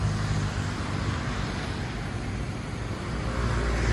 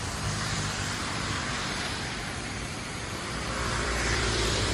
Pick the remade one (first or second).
second